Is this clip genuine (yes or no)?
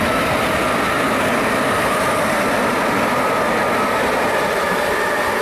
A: yes